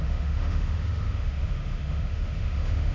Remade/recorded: remade